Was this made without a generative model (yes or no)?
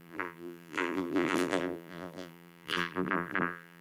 no